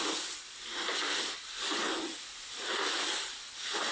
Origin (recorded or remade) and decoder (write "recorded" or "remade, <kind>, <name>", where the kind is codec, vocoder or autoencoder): recorded